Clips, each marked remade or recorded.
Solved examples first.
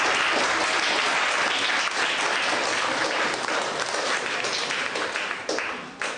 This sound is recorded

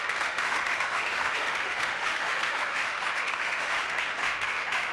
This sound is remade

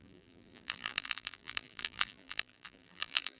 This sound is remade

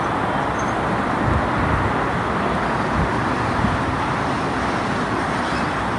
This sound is recorded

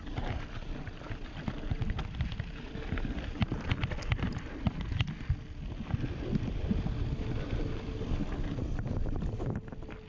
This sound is recorded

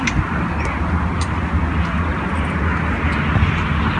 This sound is recorded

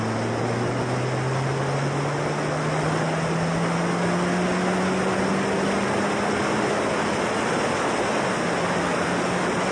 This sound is recorded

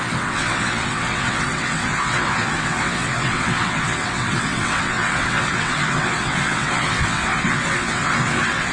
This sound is remade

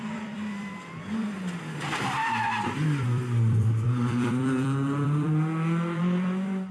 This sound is remade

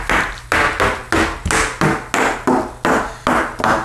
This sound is recorded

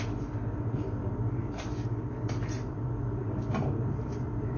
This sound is remade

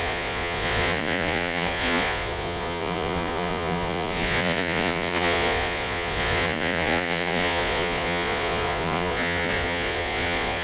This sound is remade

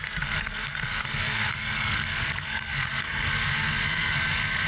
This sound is remade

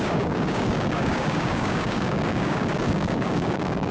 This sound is remade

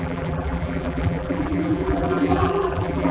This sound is remade